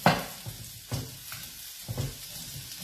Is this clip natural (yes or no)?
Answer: yes